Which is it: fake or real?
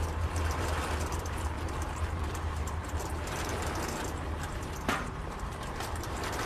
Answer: fake